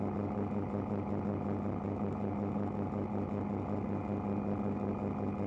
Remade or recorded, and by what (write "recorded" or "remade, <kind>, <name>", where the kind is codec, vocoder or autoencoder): recorded